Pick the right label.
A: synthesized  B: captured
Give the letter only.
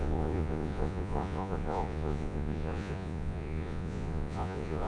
A